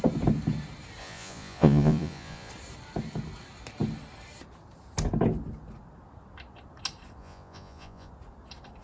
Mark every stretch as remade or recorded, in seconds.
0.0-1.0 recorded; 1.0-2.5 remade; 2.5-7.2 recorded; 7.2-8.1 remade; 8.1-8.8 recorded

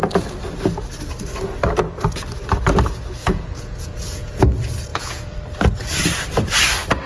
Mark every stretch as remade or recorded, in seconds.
0.0-3.2 recorded; 3.2-4.4 remade; 4.4-4.9 recorded; 4.9-5.4 remade; 5.4-7.1 recorded